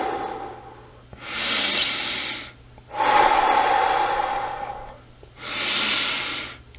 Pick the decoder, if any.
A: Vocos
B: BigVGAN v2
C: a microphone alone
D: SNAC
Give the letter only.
C